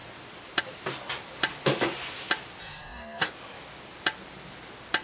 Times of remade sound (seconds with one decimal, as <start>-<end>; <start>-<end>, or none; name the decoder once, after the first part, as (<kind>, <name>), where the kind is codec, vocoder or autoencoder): 2.6-3.3 (autoencoder, DAC-VAE)

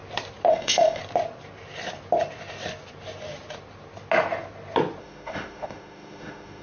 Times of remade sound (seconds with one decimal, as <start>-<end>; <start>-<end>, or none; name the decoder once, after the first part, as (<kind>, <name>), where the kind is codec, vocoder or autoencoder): 0.5-1.0 (autoencoder, DAC-VAE); 5.0-6.6

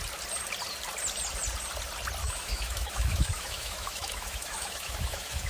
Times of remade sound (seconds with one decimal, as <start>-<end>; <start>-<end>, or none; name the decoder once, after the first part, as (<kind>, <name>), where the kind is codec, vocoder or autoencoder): 2.2-5.5 (autoencoder, DAC-VAE)

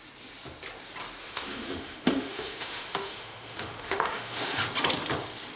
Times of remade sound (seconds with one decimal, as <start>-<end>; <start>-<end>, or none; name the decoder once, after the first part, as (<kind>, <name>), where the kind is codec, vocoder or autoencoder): 1.2-4.6 (autoencoder, DAC-VAE)

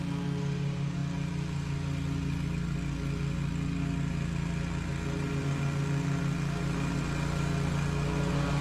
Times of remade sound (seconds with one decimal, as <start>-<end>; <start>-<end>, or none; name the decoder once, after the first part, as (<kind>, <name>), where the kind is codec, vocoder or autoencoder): none

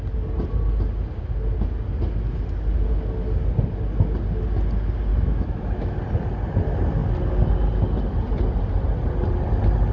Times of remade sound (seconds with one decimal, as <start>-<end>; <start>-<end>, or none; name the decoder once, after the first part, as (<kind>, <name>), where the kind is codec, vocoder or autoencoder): 5.1-6.0 (autoencoder, DAC-VAE)

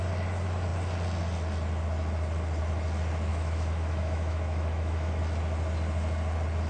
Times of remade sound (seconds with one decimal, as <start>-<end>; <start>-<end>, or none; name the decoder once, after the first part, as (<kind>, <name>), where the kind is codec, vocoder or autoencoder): 3.3-5.2 (autoencoder, DAC-VAE)